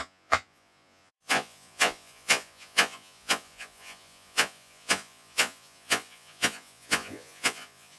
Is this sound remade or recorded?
remade